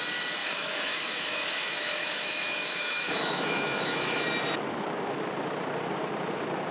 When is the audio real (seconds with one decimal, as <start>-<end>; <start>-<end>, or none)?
0.0-0.4; 4.2-6.7